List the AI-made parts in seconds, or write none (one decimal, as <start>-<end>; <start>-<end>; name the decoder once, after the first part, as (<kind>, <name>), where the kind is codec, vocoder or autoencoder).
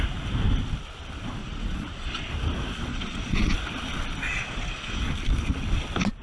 1.4-2.3 (vocoder, Vocos); 2.9-3.5; 4.3-5.0